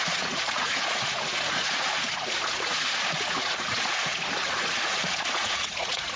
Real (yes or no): no